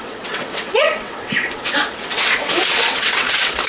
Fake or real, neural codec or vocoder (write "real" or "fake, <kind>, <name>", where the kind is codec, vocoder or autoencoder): fake, vocoder, WaveNeXt